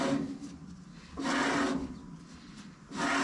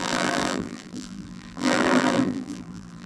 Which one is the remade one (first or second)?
second